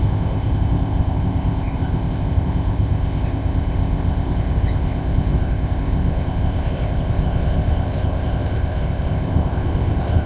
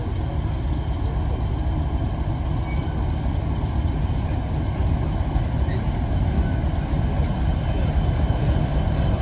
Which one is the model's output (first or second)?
first